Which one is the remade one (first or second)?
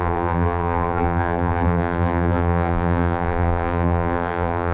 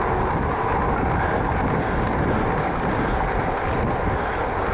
first